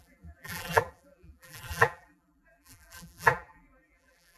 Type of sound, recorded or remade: remade